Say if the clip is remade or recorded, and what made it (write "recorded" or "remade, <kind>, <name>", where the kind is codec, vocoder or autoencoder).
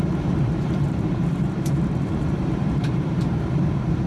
remade, vocoder, BigVGAN v2